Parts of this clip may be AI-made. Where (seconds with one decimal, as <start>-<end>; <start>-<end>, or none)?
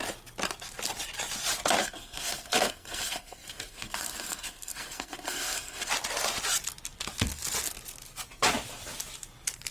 1.8-5.9